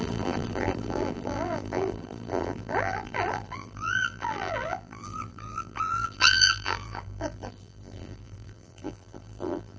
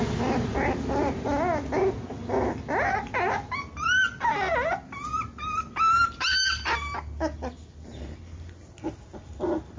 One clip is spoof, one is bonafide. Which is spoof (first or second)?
first